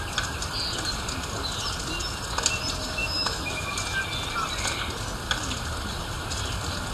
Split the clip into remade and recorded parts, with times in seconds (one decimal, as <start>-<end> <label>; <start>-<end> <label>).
0.0-3.0 recorded; 3.0-3.7 remade; 3.7-6.9 recorded